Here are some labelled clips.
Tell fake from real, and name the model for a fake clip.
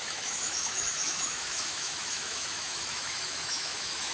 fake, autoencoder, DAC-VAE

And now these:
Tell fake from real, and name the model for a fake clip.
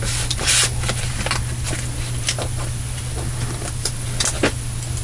real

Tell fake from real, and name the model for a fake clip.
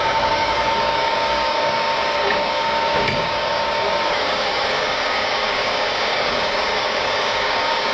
fake, codec, DAC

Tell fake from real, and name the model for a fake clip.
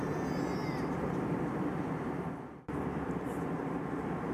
fake, vocoder, BigVGAN v2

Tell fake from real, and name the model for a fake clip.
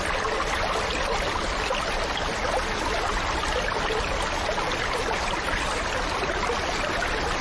real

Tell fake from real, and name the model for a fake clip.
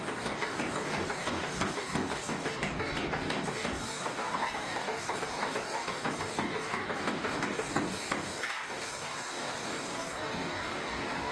fake, codec, DAC